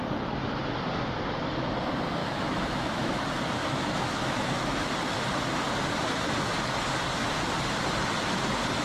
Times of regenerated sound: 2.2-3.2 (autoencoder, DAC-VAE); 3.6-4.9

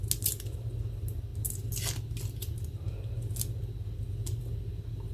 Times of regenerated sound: none